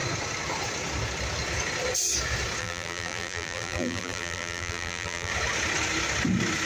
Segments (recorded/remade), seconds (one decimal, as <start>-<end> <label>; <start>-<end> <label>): 0.0-2.6 recorded; 2.6-5.3 remade; 5.3-6.7 recorded